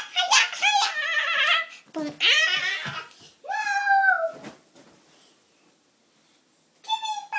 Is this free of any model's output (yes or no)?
yes